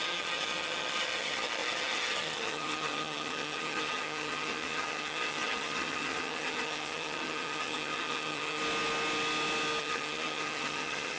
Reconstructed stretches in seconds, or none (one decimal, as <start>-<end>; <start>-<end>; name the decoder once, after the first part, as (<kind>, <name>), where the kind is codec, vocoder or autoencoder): 0.0-8.6 (vocoder, HiFi-GAN); 9.8-11.2